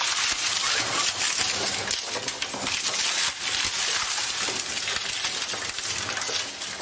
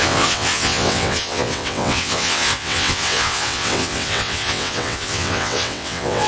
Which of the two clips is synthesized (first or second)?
second